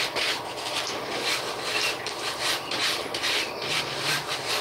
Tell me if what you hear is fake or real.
fake